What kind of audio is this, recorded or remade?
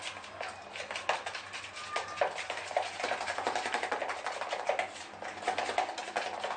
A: recorded